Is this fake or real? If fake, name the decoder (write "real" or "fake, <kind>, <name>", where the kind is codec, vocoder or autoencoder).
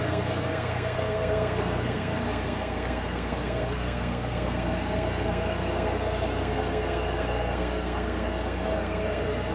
fake, codec, SNAC